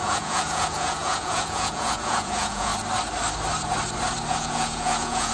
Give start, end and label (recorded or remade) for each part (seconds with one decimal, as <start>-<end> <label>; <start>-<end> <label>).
0.0-2.7 remade; 2.7-4.3 recorded; 4.3-5.3 remade